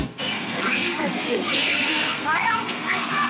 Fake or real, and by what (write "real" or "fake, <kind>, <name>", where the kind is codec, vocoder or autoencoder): fake, codec, SNAC